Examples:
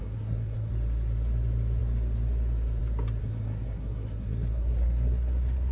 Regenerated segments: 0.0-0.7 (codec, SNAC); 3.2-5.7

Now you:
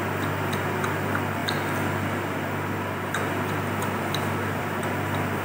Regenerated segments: none

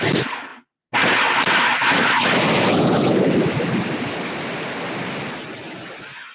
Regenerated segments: none

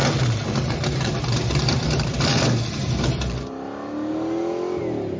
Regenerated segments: 0.0-3.1 (vocoder, BigVGAN v2)

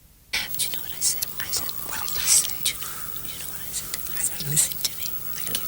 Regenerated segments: 2.7-3.9 (vocoder, BigVGAN v2)

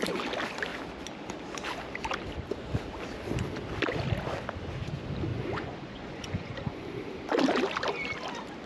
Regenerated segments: 5.3-7.0 (vocoder, Vocos)